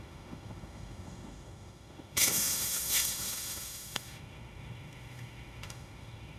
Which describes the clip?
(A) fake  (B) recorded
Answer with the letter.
A